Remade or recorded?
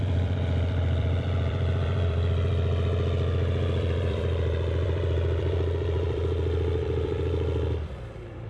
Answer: remade